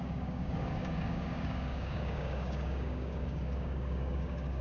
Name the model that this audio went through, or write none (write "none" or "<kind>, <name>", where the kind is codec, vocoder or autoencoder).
codec, DAC